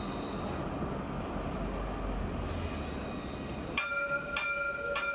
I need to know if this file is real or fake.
real